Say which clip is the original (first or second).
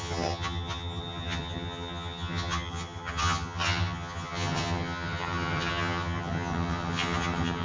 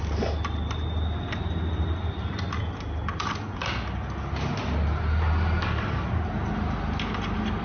second